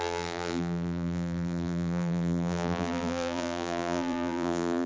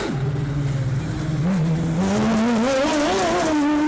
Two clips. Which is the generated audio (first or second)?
first